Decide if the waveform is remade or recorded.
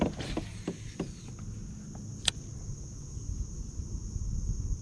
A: recorded